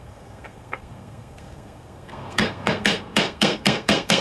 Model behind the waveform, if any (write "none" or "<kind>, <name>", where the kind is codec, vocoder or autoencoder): codec, SNAC